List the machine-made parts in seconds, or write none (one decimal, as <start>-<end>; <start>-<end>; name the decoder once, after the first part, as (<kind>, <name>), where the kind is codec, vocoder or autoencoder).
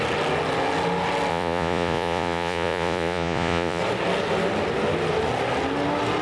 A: 1.3-3.8 (vocoder, Vocos)